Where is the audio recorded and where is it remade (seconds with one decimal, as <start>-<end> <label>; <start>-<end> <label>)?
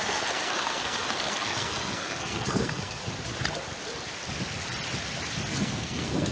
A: 0.0-3.0 remade; 3.0-5.5 recorded; 5.5-6.3 remade